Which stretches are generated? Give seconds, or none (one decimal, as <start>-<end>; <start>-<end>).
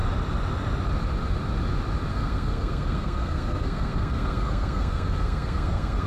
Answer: 2.1-6.1